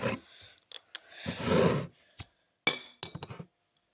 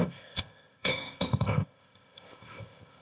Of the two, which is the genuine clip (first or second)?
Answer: first